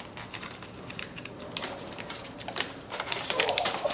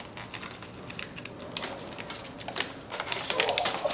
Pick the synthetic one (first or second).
first